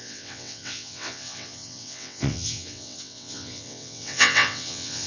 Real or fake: fake